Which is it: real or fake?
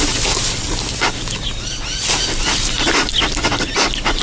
real